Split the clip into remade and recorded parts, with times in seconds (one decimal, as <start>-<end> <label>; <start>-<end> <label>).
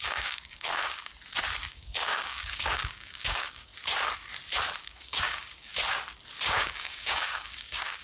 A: 0.0-1.1 remade; 1.1-1.7 recorded; 1.7-3.7 remade; 3.7-4.8 recorded; 4.8-5.7 remade; 5.7-6.5 recorded; 6.5-8.0 remade